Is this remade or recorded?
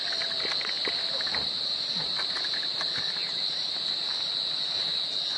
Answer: recorded